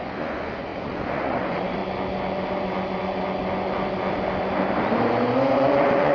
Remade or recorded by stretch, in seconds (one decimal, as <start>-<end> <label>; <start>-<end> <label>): 0.0-1.8 remade; 1.8-5.5 recorded; 5.5-6.1 remade